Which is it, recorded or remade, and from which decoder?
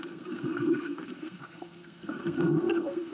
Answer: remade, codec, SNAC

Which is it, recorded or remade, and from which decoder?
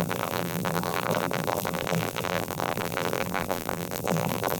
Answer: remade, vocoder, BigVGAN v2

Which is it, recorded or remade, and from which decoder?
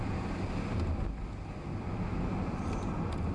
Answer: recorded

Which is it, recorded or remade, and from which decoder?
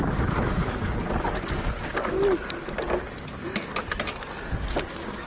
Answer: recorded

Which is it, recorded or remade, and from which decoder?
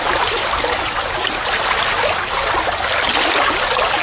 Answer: recorded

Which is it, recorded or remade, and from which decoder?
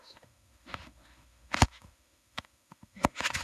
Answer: remade, autoencoder, DAC-VAE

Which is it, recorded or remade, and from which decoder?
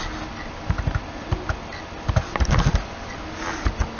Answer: recorded